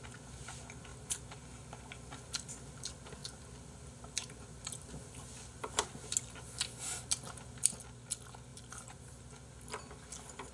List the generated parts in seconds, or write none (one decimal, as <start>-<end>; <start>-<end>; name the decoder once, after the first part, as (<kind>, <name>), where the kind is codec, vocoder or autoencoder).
8.5-9.2 (vocoder, BigVGAN v2)